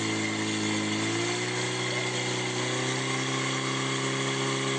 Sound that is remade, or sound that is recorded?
recorded